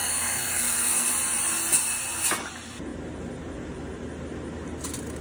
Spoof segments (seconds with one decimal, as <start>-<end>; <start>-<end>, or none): 0.0-1.1